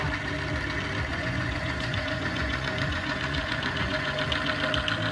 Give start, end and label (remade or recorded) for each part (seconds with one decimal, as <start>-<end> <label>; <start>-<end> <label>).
0.0-1.1 recorded; 1.1-4.2 remade; 4.2-5.1 recorded